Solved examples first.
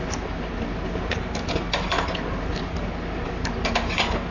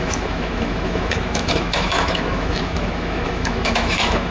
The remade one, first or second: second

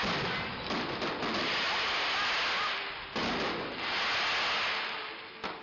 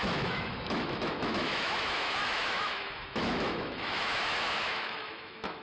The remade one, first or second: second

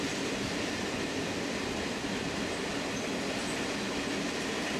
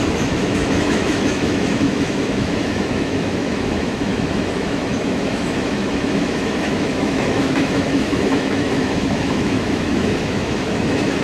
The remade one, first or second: second